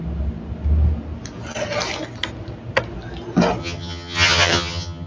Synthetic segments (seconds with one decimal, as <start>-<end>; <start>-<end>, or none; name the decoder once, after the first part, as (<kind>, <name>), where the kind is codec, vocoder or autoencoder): 3.6-5.1 (vocoder, HiFi-GAN)